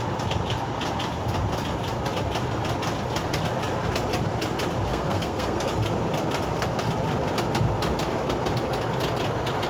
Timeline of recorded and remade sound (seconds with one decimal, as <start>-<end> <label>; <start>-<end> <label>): 0.0-4.9 recorded; 4.9-5.7 remade; 5.7-9.7 recorded